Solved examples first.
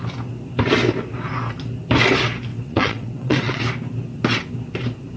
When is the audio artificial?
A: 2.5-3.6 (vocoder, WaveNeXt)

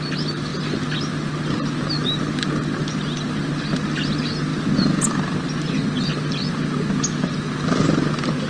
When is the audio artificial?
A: none

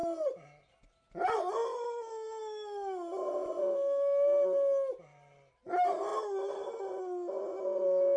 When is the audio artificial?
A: none

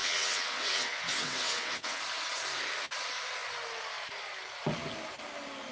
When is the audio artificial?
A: 0.0-2.0 (vocoder, WaveNeXt)

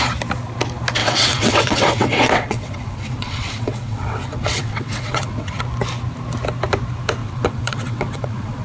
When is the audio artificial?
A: 1.0-5.6 (vocoder, WaveNeXt); 7.2-8.6